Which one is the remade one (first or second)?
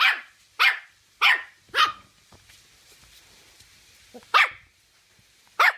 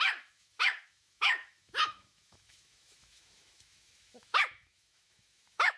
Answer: second